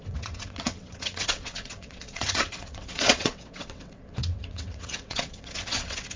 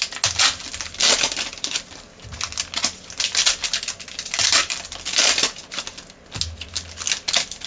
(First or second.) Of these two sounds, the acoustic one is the second